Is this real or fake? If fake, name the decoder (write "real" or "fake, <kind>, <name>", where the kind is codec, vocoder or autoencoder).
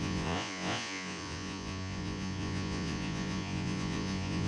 fake, vocoder, Vocos